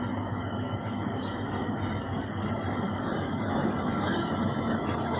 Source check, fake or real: fake